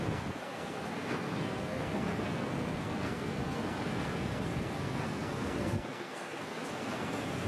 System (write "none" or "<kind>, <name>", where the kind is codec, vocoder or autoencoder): codec, SNAC